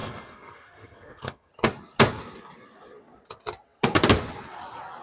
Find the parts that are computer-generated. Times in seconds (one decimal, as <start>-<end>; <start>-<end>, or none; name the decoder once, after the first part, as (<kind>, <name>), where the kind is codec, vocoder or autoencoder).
0.0-1.5 (codec, SNAC)